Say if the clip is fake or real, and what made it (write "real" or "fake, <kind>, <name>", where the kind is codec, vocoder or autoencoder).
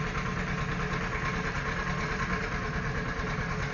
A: real